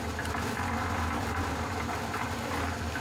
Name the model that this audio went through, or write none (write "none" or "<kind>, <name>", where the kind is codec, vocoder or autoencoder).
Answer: none